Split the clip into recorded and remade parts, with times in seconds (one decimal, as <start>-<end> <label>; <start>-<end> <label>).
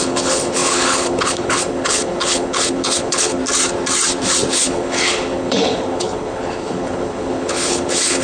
0.0-3.4 remade; 3.4-4.5 recorded; 4.5-8.2 remade